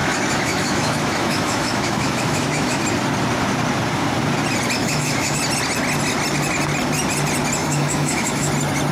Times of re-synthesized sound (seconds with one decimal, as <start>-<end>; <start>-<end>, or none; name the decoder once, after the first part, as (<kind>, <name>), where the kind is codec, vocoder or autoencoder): 0.0-2.8 (autoencoder, DAC-VAE); 4.8-5.4; 7.6-8.5

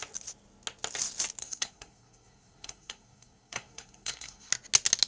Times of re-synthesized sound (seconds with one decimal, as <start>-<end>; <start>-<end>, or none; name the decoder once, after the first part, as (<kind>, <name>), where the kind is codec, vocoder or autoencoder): 1.4-4.5 (codec, SNAC)

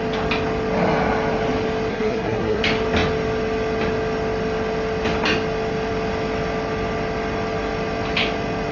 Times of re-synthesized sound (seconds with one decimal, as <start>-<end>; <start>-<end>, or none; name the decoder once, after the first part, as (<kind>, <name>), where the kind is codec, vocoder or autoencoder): 1.9-2.6 (codec, SNAC)

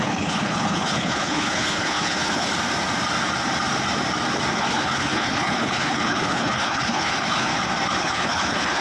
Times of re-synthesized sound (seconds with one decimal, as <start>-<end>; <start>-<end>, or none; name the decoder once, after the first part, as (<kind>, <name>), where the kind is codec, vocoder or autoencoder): 0.0-2.5 (codec, HILCodec); 4.5-7.5; 8.0-8.8

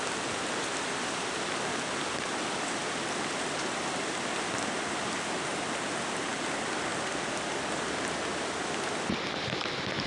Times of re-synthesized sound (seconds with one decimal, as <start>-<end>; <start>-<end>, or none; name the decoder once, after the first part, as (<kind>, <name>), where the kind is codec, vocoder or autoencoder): none

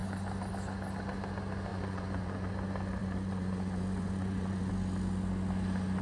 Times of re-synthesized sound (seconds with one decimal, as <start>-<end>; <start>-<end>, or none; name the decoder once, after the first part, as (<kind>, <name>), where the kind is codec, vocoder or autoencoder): 1.7-2.5 (vocoder, Vocos); 3.0-4.7

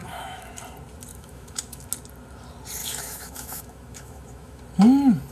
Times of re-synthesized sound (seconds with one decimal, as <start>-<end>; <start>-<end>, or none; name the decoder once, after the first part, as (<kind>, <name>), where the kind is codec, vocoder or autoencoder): 0.0-0.5 (autoencoder, DAC-VAE); 1.1-1.9; 2.8-4.6

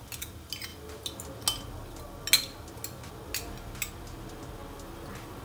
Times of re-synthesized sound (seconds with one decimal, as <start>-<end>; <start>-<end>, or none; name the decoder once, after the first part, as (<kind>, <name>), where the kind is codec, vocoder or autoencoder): none